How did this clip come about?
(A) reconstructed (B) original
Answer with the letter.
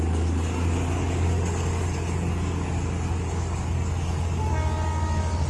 A